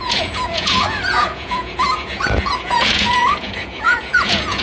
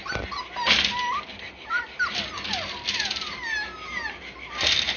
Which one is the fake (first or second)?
first